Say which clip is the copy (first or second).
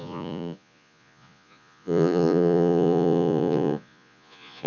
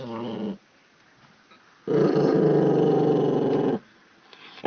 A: first